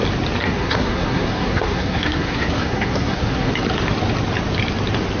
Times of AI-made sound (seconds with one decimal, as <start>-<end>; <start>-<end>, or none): 0.4-3.5